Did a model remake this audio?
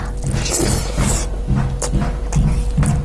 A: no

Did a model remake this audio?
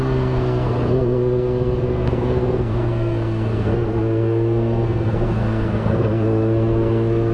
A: yes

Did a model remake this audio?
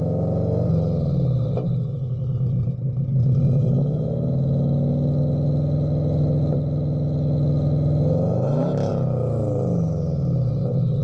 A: no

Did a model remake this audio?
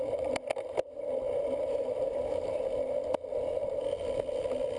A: no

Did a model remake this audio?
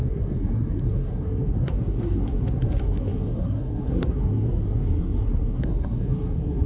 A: yes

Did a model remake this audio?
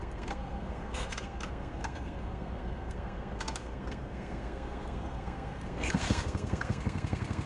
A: yes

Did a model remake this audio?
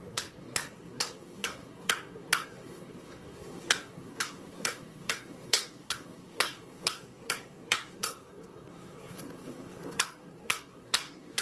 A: yes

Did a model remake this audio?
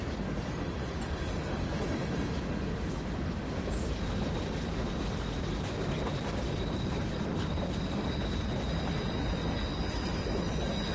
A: no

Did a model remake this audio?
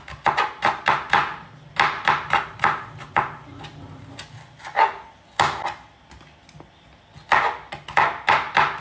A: no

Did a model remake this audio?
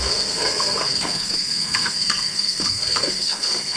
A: yes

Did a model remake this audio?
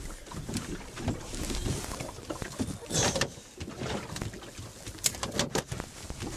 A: no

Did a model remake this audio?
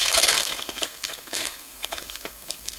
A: yes